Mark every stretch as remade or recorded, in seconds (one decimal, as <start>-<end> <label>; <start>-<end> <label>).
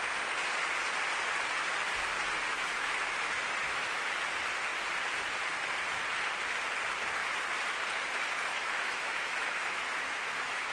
0.0-2.5 recorded; 2.5-4.1 remade; 4.1-8.5 recorded; 8.5-10.7 remade